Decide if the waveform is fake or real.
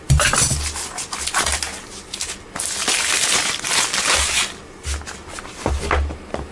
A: real